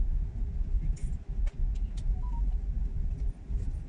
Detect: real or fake real